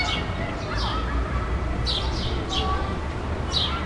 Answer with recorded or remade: recorded